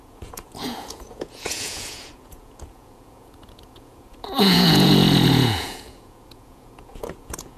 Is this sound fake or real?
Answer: fake